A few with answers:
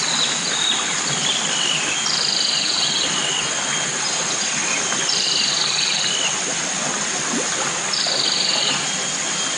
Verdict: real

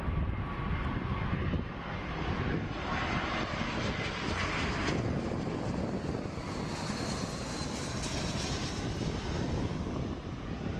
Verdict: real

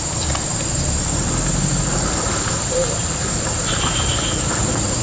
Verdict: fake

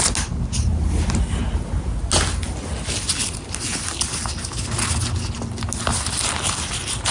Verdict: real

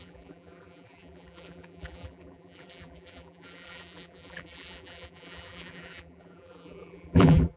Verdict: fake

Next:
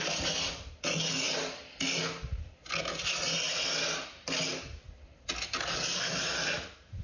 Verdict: real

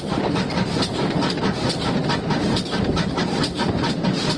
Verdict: fake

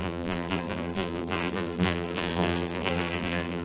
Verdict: fake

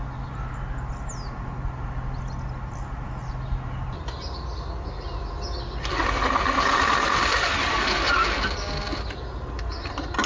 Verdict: real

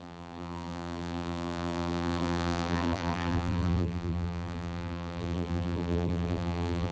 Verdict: fake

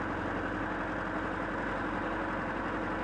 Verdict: real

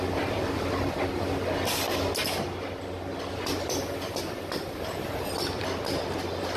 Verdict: real